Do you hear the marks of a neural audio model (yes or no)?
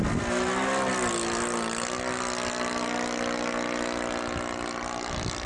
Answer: no